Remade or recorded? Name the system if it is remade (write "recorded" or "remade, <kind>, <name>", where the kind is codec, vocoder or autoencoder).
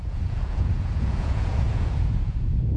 remade, vocoder, Vocos